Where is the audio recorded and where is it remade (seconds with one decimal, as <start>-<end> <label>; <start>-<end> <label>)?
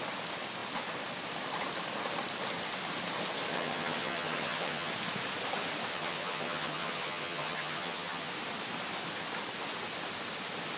0.0-3.5 recorded; 3.5-4.9 remade; 4.9-5.9 recorded; 5.9-8.3 remade; 8.3-10.8 recorded